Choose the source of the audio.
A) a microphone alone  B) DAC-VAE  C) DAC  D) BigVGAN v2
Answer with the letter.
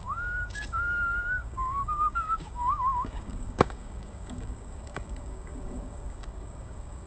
C